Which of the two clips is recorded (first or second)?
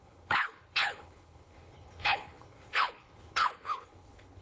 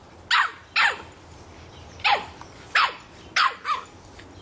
second